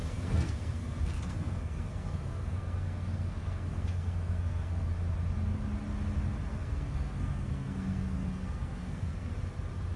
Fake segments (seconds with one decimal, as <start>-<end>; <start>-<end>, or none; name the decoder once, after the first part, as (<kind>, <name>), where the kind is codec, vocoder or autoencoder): 0.0-4.9 (codec, SNAC); 6.5-9.3